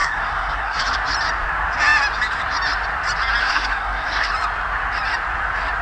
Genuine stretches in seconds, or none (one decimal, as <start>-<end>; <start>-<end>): 0.8-3.4; 4.3-5.8